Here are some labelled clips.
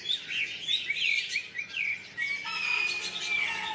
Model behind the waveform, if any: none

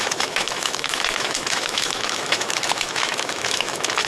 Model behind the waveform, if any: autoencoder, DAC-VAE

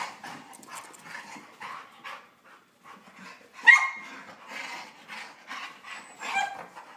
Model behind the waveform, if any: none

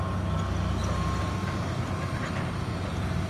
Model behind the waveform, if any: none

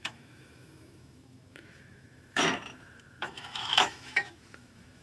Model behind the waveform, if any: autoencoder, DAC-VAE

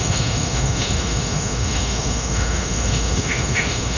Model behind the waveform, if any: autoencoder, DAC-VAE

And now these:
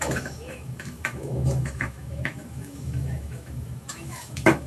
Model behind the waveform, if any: autoencoder, DAC-VAE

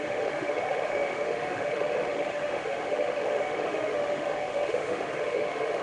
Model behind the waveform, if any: autoencoder, DAC-VAE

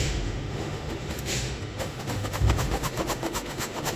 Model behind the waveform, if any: autoencoder, DAC-VAE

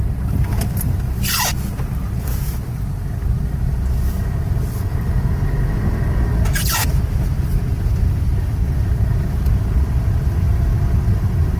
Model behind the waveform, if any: none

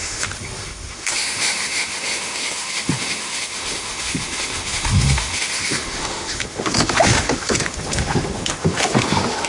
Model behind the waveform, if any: autoencoder, DAC-VAE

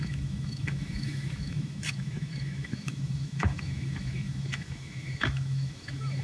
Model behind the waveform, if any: autoencoder, DAC-VAE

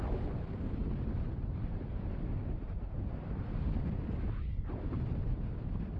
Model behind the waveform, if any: none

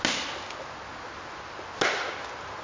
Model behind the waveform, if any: none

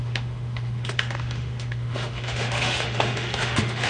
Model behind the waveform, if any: autoencoder, DAC-VAE